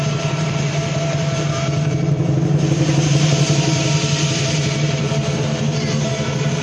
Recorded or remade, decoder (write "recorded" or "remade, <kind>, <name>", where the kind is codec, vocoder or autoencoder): remade, vocoder, BigVGAN v2